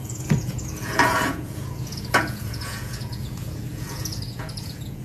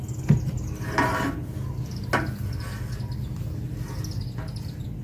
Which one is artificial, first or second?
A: first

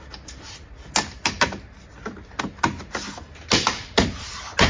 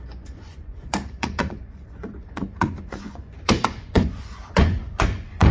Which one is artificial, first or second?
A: second